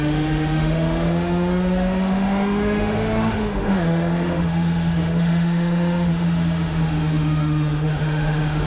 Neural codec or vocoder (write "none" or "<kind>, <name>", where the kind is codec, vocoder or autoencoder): autoencoder, DAC-VAE